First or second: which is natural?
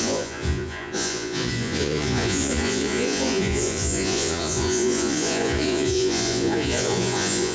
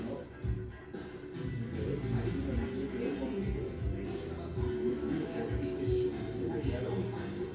second